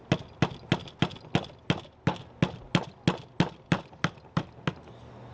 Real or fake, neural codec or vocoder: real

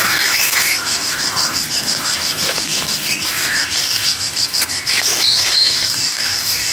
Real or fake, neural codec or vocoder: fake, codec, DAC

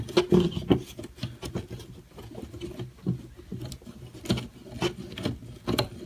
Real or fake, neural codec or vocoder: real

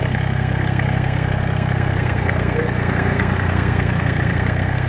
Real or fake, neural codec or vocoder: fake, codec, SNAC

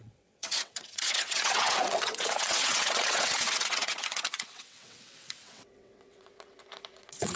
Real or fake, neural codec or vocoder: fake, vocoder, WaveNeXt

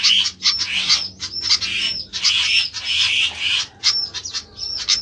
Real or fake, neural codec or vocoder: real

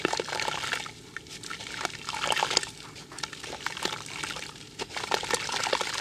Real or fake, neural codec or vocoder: real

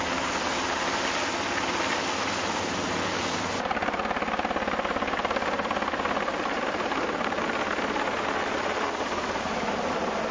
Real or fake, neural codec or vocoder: real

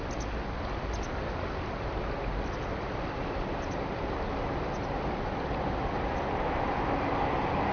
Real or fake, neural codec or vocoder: real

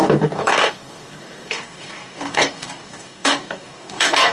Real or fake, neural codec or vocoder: fake, codec, DAC